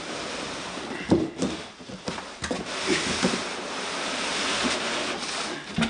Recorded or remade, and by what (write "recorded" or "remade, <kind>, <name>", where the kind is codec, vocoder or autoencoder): recorded